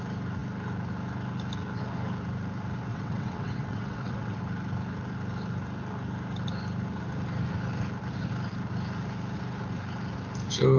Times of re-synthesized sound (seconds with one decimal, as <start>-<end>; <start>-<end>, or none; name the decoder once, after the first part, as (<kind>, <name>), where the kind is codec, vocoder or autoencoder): 2.9-4.4 (vocoder, WaveNeXt)